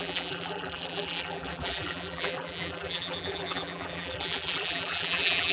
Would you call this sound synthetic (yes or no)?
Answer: yes